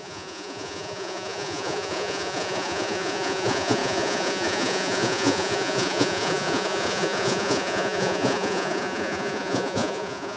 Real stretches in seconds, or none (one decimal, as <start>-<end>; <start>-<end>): none